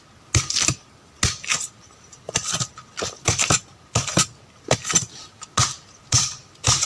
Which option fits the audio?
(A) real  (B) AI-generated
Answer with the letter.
A